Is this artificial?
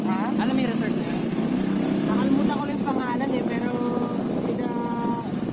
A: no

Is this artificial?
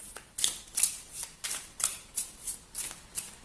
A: no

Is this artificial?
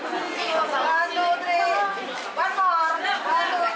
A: no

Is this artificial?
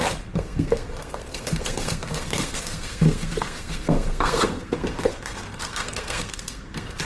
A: yes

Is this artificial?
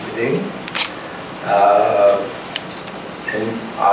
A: no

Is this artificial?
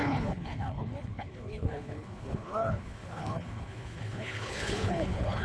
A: yes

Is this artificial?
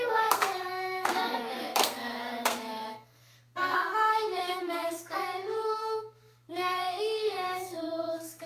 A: yes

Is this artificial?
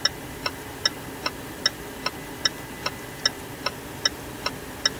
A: no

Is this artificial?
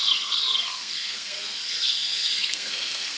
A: yes